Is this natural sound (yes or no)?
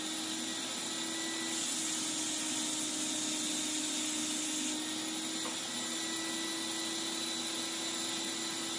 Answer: yes